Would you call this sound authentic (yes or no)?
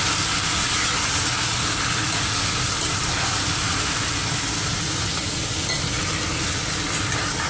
yes